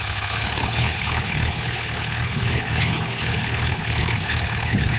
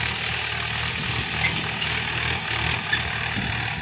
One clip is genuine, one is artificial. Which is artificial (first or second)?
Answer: first